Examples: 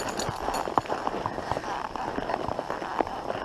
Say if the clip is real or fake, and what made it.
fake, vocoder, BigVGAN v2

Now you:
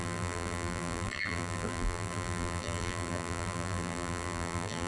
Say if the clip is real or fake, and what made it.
fake, vocoder, BigVGAN v2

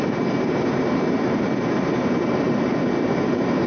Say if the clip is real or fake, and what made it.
fake, vocoder, BigVGAN v2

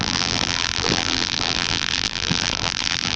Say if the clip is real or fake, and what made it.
fake, vocoder, BigVGAN v2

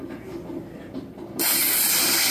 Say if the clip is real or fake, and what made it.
fake, vocoder, BigVGAN v2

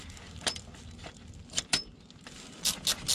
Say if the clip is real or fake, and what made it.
real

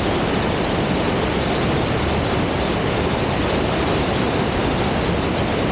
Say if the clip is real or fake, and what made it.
real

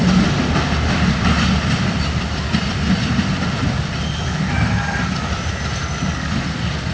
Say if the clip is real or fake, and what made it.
fake, vocoder, BigVGAN v2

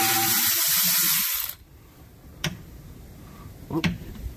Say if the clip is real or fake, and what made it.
fake, vocoder, BigVGAN v2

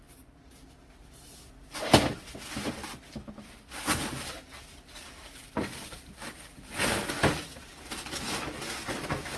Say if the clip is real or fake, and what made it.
real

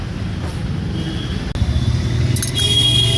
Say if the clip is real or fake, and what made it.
real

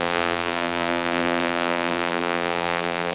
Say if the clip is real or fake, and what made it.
fake, vocoder, BigVGAN v2